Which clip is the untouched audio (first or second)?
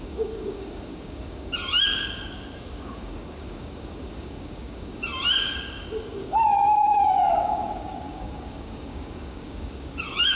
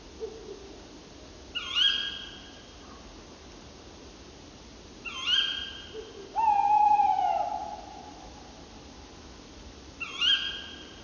second